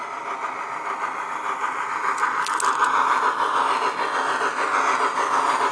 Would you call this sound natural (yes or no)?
yes